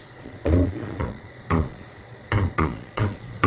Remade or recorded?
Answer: remade